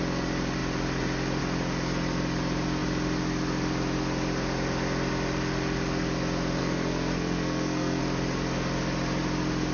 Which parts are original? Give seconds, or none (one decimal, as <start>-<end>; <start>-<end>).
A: 0.0-6.6; 8.0-9.7